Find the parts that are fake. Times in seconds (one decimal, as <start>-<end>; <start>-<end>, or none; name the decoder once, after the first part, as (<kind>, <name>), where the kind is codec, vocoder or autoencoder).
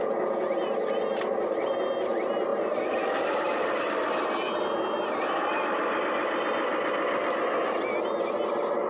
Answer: 1.1-1.7 (vocoder, BigVGAN v2); 2.5-3.8